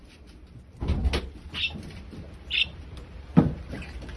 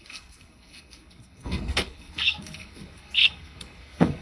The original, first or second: first